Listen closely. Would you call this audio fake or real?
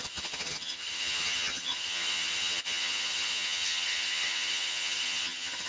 fake